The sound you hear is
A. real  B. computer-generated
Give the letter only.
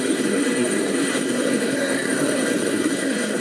B